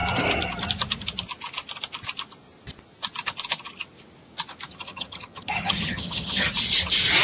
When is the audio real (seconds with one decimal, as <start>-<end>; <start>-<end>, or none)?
0.0-4.7; 6.5-7.2